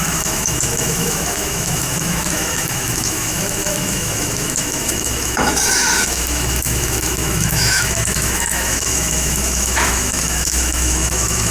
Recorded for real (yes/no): no